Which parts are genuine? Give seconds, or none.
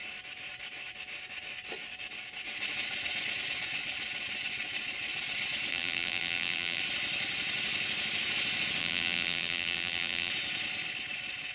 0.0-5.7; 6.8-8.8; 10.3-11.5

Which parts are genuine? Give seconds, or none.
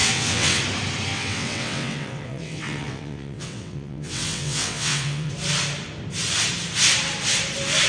0.6-1.1; 5.3-7.9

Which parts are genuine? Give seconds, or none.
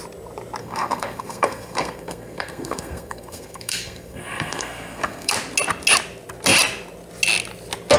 0.0-0.6; 5.3-8.0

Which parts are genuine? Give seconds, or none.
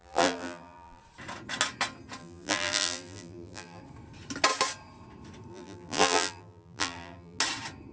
1.0-2.2; 3.8-5.5; 7.4-7.9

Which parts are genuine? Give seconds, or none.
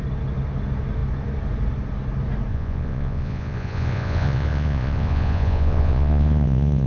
0.0-2.5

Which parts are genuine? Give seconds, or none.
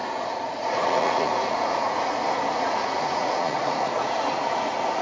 none